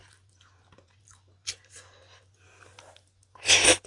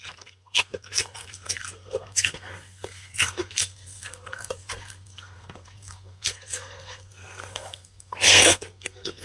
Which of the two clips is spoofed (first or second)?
second